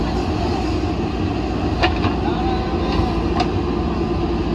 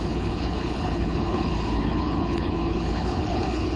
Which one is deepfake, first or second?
second